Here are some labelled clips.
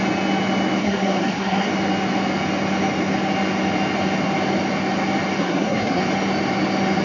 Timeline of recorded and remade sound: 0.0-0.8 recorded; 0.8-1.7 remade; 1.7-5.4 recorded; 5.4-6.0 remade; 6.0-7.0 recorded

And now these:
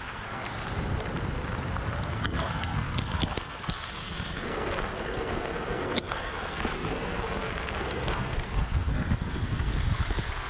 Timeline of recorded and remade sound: 0.0-0.4 remade; 0.4-2.1 recorded; 2.1-10.5 remade